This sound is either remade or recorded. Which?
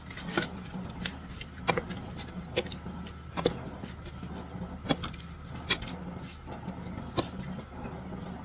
recorded